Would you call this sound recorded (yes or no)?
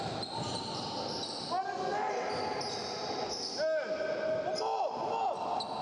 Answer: yes